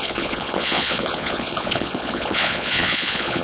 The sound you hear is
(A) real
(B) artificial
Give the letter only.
B